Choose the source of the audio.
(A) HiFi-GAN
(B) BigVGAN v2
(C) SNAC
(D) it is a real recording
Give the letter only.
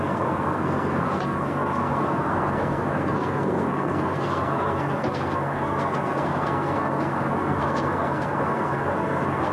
C